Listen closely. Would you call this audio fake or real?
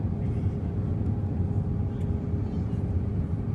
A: real